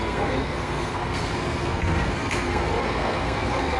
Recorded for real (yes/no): no